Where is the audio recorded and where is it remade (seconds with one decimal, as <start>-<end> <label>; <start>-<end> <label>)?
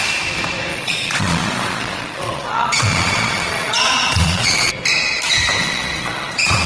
0.0-0.7 recorded; 0.7-4.7 remade; 4.7-5.6 recorded; 5.6-6.7 remade